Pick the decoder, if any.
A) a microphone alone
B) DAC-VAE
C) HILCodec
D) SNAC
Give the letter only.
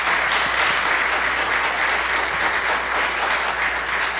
A